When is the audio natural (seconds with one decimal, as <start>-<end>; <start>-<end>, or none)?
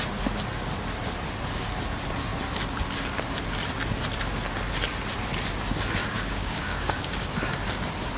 0.0-6.0; 7.3-8.2